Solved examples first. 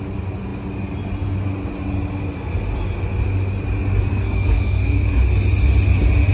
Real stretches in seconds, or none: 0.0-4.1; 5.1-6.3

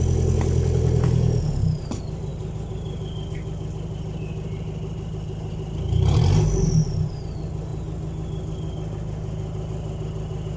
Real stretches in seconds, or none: 0.0-10.6

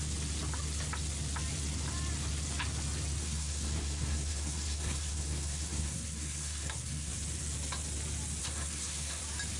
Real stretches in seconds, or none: 0.0-3.2; 7.1-8.4; 9.2-9.6

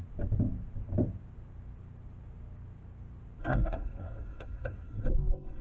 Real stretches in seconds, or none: 0.0-3.4

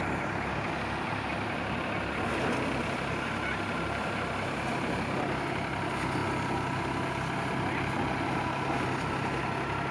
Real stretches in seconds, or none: 0.0-9.9

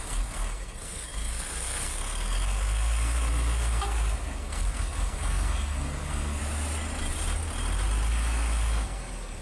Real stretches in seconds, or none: 6.4-8.1